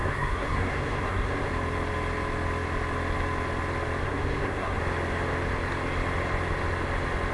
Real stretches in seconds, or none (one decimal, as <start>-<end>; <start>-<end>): 1.5-4.0; 4.8-7.3